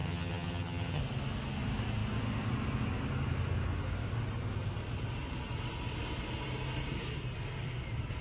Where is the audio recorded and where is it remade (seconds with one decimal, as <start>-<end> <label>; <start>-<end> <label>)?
0.0-1.0 remade; 1.0-8.2 recorded